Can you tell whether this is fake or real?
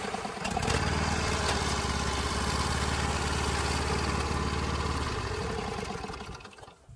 real